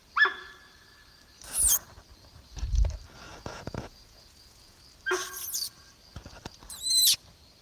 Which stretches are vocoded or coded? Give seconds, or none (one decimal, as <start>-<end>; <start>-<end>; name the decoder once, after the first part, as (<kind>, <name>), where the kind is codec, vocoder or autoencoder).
3.3-4.8 (vocoder, Vocos)

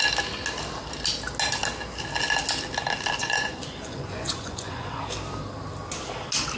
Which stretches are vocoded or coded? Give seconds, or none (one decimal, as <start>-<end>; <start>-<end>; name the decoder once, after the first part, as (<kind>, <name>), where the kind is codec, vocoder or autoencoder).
3.2-5.0 (vocoder, Vocos)

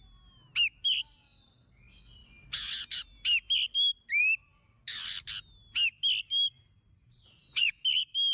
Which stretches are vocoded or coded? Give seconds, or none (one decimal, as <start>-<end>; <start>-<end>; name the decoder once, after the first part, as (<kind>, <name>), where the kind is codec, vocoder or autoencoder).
6.9-7.7 (vocoder, Vocos)

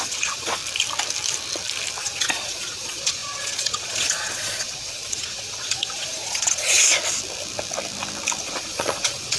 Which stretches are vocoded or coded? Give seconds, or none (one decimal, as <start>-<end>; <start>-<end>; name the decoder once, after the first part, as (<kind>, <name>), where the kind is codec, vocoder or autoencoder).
0.0-0.6 (vocoder, Vocos); 2.0-7.0; 8.4-9.4

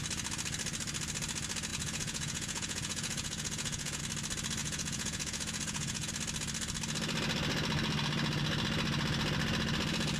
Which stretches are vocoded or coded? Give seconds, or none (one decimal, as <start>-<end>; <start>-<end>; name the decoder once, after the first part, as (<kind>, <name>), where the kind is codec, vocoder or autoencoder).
1.7-4.0 (vocoder, Vocos); 4.6-6.1

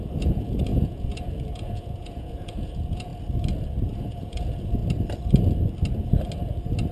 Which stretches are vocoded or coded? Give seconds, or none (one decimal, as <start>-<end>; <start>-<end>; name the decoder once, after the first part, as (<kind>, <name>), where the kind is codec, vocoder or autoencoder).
0.0-3.1 (vocoder, Vocos); 4.0-4.8